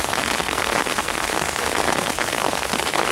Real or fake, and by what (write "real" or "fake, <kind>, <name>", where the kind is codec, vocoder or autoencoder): fake, codec, SNAC